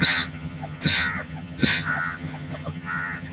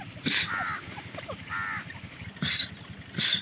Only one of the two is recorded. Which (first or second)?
second